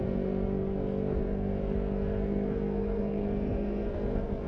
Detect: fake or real fake